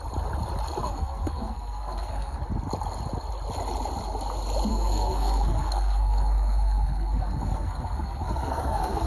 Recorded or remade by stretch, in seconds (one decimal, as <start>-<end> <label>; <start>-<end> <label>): 0.0-0.8 recorded; 0.8-2.4 remade; 2.4-4.7 recorded; 4.7-9.1 remade